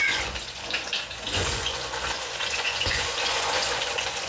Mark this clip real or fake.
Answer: fake